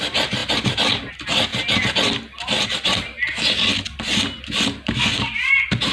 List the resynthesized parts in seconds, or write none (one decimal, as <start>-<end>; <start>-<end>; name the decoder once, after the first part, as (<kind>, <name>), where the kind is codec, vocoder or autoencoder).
none